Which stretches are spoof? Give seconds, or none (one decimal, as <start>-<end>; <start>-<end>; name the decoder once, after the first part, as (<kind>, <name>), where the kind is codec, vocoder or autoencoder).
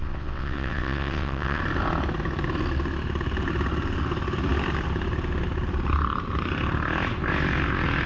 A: 0.0-1.6 (vocoder, WaveNeXt)